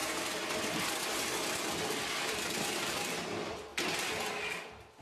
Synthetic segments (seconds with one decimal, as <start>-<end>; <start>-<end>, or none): 0.8-3.7; 4.6-5.0